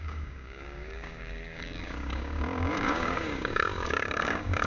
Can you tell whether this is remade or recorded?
remade